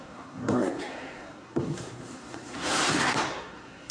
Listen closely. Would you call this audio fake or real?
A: fake